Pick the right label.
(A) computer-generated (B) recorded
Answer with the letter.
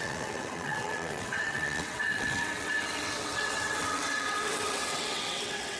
A